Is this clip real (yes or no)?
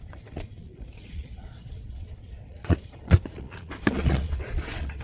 no